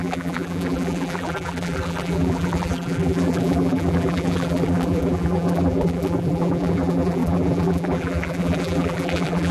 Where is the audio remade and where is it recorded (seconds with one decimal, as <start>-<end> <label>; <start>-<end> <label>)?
0.0-9.5 remade